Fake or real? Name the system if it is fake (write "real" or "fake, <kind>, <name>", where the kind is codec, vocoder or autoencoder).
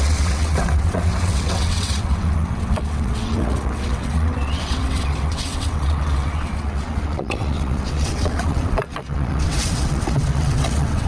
fake, vocoder, WaveNeXt